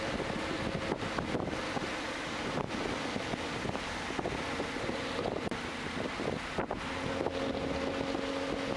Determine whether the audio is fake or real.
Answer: real